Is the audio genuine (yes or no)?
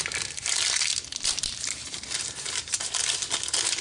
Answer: no